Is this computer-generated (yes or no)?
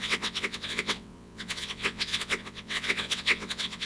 yes